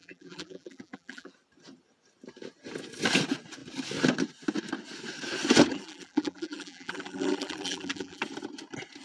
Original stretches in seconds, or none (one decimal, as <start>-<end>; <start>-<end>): 1.3-5.7; 8.2-9.0